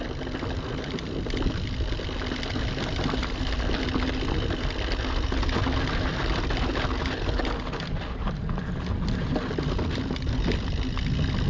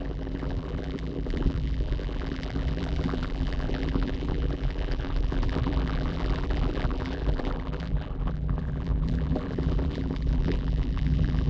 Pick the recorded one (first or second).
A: first